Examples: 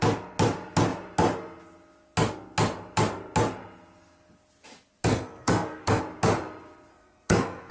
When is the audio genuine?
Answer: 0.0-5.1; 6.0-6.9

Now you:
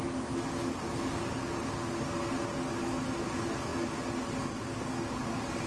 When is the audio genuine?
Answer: 0.0-5.7

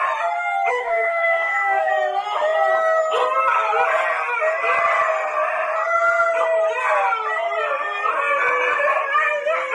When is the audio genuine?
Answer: 0.0-0.7; 1.9-9.7

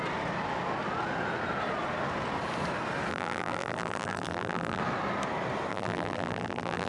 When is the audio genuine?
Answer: 0.0-3.1; 4.8-5.7